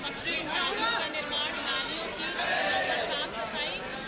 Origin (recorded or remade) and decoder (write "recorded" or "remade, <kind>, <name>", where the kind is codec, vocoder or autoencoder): recorded